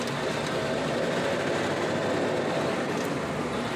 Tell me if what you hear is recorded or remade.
recorded